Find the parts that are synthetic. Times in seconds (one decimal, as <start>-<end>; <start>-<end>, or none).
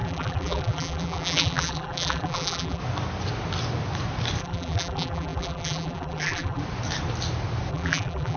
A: 0.0-2.8; 4.4-6.6; 7.7-8.4